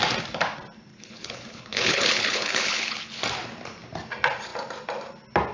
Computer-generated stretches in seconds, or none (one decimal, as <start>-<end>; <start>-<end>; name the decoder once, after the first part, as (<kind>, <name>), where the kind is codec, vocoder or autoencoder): 0.9-3.2 (codec, HILCodec)